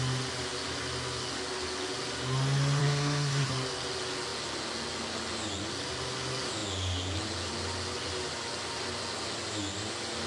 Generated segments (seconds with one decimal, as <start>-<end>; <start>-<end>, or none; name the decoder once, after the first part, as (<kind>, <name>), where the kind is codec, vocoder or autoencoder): 2.8-3.5 (codec, SNAC)